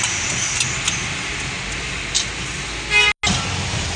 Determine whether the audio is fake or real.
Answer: real